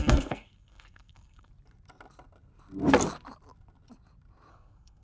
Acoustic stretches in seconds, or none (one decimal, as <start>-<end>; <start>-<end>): 1.5-4.5